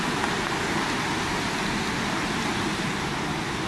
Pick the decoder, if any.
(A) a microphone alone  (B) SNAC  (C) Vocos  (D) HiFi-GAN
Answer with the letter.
A